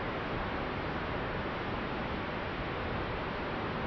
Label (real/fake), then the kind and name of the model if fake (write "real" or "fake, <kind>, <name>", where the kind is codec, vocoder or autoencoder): real